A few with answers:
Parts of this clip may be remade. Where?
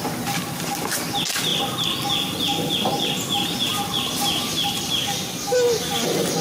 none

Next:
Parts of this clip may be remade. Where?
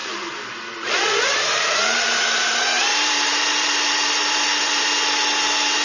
0.0-0.9; 1.3-4.8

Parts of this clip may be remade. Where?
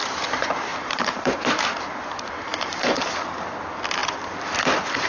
0.7-1.6; 2.5-3.1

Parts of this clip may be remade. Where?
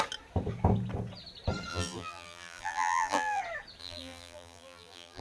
1.7-3.4; 3.8-5.2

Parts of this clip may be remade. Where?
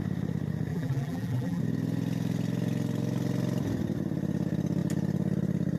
0.7-1.6